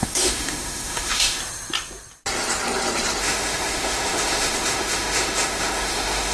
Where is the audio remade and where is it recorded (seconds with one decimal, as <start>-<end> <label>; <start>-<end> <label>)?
0.0-1.4 remade; 1.4-3.2 recorded; 3.2-6.3 remade